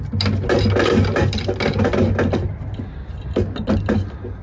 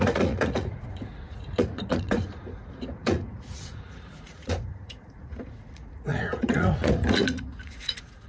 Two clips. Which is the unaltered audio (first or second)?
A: first